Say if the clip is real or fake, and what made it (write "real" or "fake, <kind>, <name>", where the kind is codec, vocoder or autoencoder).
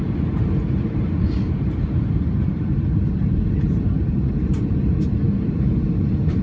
fake, vocoder, BigVGAN v2